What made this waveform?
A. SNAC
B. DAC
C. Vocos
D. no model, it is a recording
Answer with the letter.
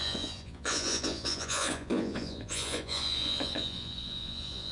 C